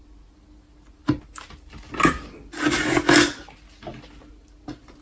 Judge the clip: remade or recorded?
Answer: recorded